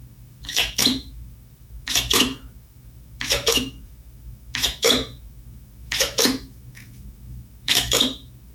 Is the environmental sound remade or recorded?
remade